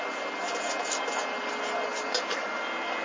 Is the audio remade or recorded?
recorded